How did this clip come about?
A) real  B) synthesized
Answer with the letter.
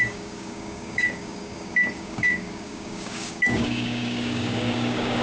B